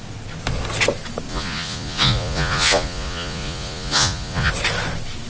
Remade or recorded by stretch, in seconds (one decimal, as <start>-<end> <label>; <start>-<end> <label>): 0.0-1.3 recorded; 1.3-4.5 remade; 4.5-5.3 recorded